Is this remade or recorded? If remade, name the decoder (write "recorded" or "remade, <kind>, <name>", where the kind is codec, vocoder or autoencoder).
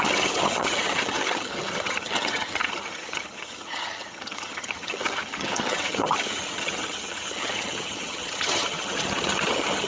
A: remade, vocoder, HiFi-GAN